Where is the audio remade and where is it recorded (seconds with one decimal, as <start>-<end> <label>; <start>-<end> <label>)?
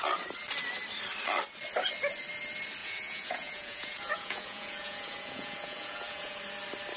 0.0-2.8 recorded; 2.8-6.4 remade; 6.4-7.0 recorded